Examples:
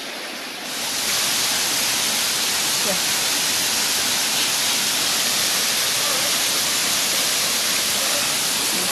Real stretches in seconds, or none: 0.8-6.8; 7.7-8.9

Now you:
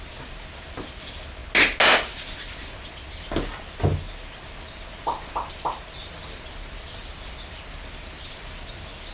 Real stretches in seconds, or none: 0.0-9.1

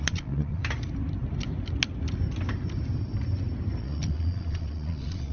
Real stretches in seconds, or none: 0.6-3.8

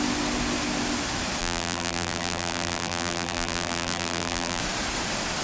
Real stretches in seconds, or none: 0.0-1.4; 4.6-5.4

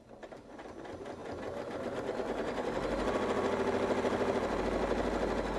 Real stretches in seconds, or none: 0.0-5.6